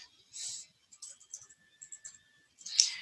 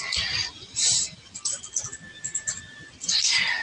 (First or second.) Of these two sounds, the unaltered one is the first